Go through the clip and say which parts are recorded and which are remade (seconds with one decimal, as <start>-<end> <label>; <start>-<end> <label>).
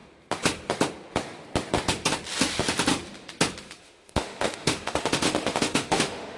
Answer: 0.0-3.8 recorded; 3.8-6.4 remade